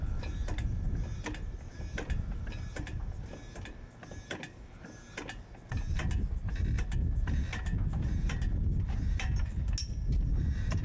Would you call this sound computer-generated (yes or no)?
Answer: no